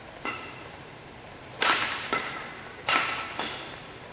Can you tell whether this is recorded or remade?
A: remade